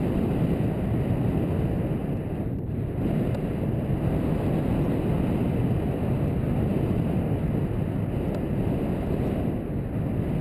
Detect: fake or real real